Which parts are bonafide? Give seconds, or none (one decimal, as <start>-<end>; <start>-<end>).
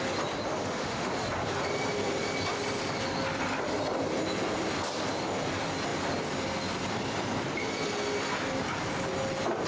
0.0-0.6; 1.1-9.7